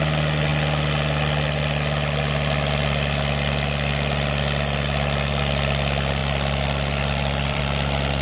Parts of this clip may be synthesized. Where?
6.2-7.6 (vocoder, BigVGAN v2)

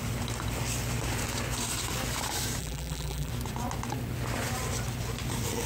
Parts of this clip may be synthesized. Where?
2.6-3.3 (vocoder, BigVGAN v2)

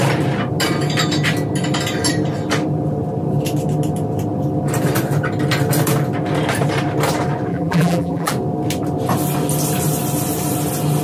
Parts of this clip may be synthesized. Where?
7.5-8.3 (vocoder, BigVGAN v2)

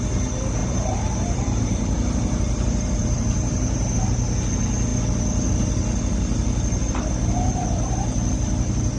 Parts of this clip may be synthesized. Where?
0.6-4.0 (vocoder, BigVGAN v2)